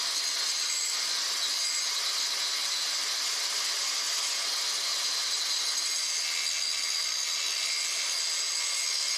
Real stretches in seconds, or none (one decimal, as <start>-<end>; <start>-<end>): 0.0-9.2